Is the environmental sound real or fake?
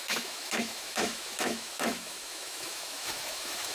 fake